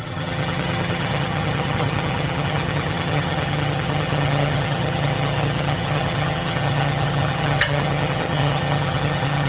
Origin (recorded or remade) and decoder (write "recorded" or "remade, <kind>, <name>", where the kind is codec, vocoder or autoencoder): remade, vocoder, HiFi-GAN